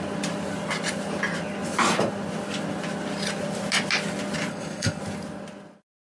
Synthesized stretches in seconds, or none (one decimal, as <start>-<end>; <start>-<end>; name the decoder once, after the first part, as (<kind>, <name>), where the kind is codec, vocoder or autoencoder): 4.5-5.0 (codec, SNAC)